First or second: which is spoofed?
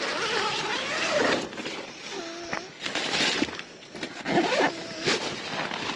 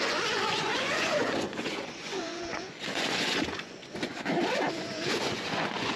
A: second